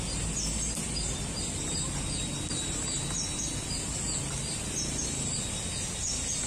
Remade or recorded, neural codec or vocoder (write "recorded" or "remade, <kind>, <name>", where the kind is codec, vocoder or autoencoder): recorded